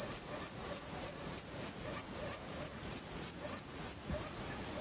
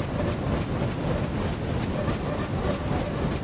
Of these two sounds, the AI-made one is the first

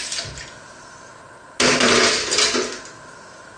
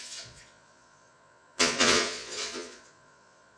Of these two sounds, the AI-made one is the second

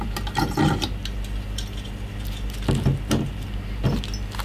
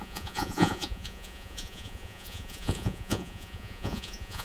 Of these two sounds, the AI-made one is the second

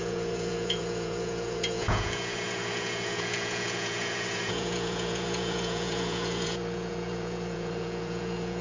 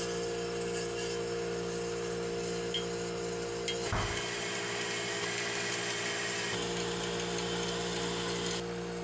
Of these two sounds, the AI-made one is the first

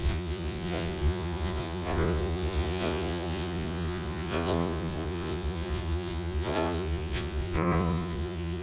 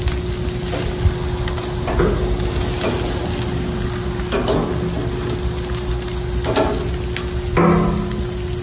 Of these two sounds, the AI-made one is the first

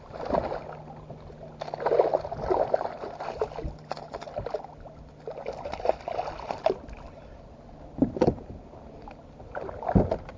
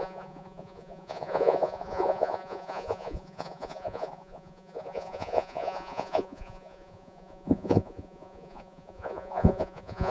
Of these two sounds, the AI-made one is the second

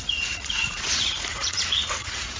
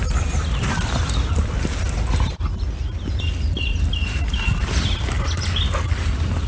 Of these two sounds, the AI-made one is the first